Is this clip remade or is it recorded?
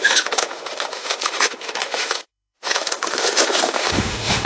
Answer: remade